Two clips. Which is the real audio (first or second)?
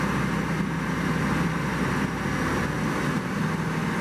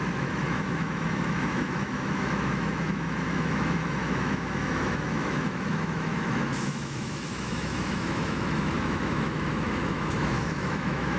first